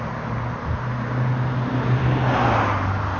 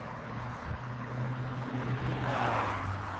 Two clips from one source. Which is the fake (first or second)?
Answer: second